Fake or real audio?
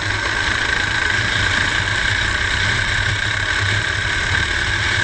real